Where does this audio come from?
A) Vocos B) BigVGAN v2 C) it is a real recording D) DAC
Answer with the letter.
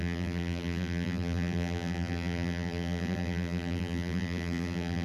B